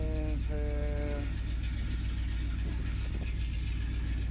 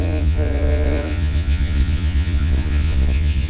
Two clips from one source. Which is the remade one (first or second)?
second